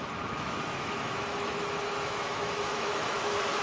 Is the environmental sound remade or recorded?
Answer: remade